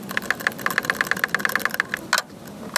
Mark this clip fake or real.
real